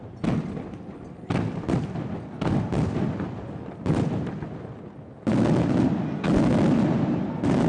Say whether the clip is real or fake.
real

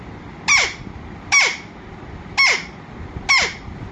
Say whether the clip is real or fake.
real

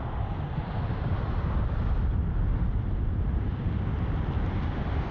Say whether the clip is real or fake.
real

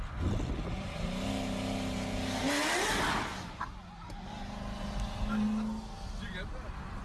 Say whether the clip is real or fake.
real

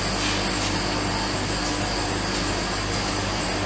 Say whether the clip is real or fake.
real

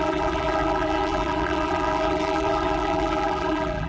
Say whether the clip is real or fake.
fake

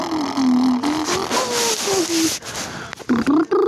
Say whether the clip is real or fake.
real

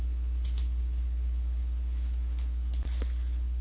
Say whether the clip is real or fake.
fake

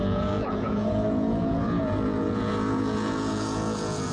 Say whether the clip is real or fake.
fake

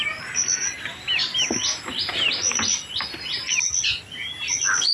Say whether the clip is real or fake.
real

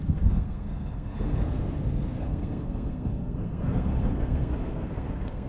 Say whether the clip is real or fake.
fake